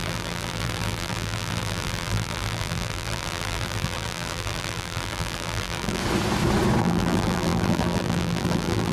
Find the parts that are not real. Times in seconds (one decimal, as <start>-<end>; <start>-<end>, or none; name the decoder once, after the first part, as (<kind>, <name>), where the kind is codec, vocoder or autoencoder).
0.0-6.0 (vocoder, BigVGAN v2); 6.8-8.9